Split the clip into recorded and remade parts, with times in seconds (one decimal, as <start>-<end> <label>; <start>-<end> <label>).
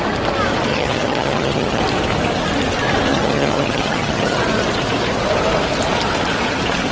0.0-0.7 recorded; 0.7-1.8 remade; 1.8-3.1 recorded; 3.1-4.4 remade; 4.4-6.9 recorded